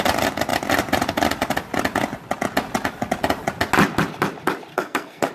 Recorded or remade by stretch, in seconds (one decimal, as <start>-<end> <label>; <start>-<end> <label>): 0.0-4.7 recorded; 4.7-5.3 remade